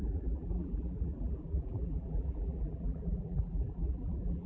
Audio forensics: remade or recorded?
remade